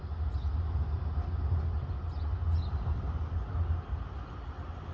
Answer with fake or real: real